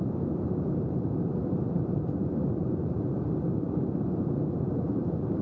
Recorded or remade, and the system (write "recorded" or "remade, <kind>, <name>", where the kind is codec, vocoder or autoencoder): remade, vocoder, BigVGAN v2